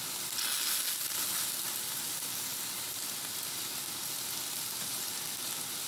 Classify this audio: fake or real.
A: real